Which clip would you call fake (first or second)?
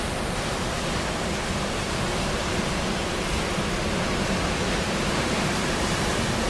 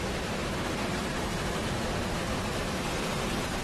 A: second